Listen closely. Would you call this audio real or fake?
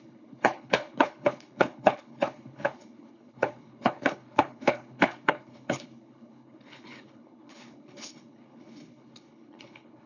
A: fake